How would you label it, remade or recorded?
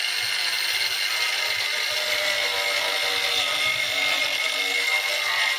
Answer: recorded